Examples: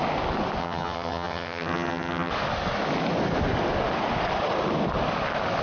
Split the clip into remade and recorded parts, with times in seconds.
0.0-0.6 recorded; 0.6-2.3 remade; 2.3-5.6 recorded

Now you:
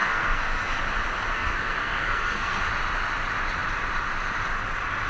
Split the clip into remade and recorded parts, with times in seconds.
0.0-0.8 remade; 0.8-1.3 recorded; 1.3-2.7 remade; 2.7-5.1 recorded

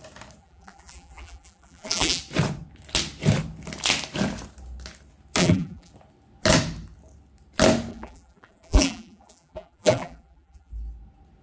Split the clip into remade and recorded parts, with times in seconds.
0.0-0.4 recorded; 0.4-2.2 remade; 2.2-5.4 recorded; 5.4-5.9 remade; 5.9-7.9 recorded; 7.9-10.7 remade; 10.7-11.4 recorded